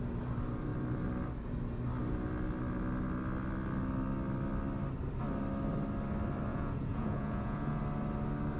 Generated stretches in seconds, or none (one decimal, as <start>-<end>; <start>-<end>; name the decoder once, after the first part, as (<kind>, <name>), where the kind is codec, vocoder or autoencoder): 6.5-7.8 (vocoder, Vocos)